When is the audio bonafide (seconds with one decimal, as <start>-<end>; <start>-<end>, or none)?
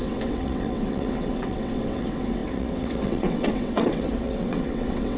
none